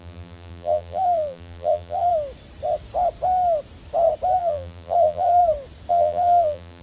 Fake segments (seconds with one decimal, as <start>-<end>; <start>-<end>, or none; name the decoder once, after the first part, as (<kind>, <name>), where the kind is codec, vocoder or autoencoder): 0.0-2.1 (vocoder, BigVGAN v2); 4.4-5.4; 5.9-6.8